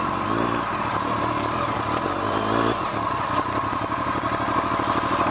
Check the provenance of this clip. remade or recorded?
recorded